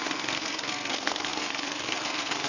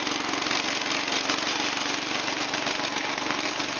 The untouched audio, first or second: second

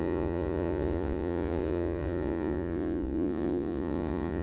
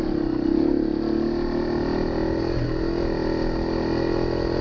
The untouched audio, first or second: second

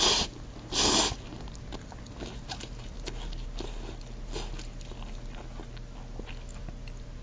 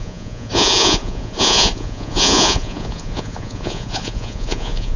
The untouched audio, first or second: first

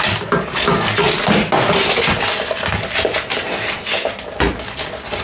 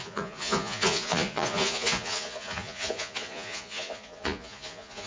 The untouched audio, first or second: first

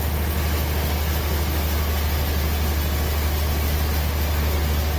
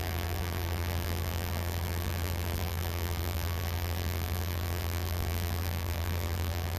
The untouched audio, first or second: first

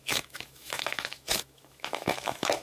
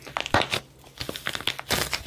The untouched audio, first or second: second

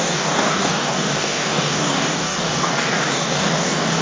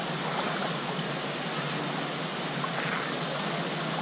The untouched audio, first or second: second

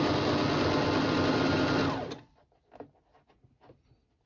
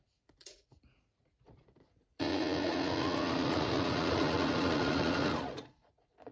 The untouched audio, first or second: first